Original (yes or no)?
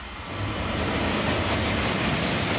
yes